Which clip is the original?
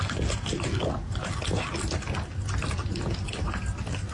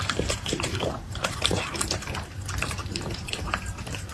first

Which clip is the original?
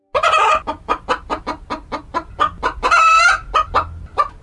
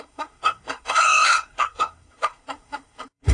first